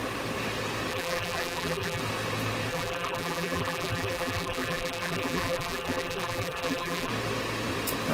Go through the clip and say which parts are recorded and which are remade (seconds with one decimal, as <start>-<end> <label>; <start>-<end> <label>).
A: 0.0-0.9 recorded; 0.9-2.0 remade; 2.0-2.7 recorded; 2.7-7.1 remade; 7.1-8.1 recorded